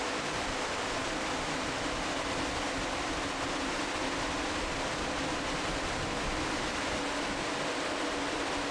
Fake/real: real